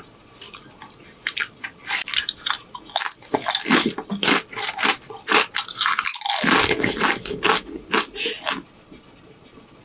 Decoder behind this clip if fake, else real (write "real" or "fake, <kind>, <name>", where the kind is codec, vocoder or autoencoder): real